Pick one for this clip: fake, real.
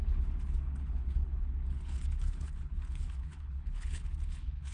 fake